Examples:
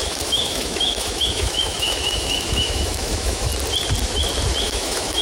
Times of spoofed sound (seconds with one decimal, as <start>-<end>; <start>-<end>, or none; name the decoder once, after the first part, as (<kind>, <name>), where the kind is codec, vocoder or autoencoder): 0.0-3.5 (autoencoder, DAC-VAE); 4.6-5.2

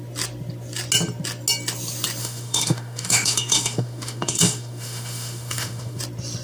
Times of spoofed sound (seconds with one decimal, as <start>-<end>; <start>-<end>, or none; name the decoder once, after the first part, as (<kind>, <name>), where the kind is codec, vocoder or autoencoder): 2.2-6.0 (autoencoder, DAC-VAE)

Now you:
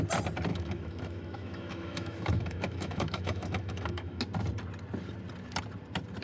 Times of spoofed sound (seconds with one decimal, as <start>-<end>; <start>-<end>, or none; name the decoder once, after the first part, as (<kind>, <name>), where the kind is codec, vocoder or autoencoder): 0.5-4.2 (autoencoder, DAC-VAE)

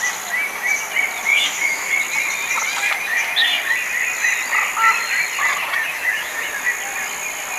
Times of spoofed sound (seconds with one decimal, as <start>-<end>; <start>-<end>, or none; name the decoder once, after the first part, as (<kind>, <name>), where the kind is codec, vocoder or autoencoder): 1.3-1.9 (autoencoder, DAC-VAE); 5.9-6.5

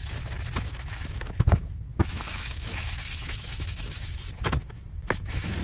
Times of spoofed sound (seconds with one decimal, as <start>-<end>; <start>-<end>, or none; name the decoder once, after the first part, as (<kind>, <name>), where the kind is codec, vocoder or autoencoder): 0.6-5.6 (autoencoder, DAC-VAE)

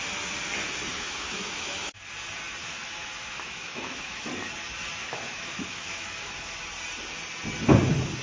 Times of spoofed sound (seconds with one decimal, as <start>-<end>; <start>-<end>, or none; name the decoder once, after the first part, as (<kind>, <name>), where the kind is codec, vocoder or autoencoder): 0.9-2.0 (autoencoder, DAC-VAE); 2.6-4.5; 5.0-6.6

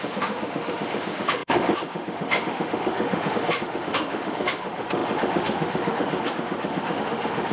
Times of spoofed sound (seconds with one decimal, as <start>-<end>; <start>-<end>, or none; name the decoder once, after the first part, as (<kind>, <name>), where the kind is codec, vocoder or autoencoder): 0.0-7.5 (autoencoder, DAC-VAE)

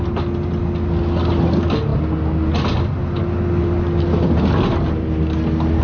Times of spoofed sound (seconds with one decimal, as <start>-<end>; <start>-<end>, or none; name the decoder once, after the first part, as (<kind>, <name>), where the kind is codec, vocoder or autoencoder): none